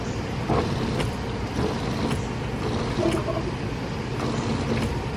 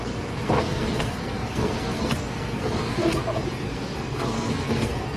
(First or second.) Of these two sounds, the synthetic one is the second